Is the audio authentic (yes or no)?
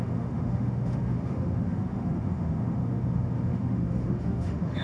no